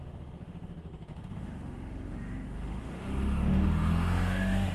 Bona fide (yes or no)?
no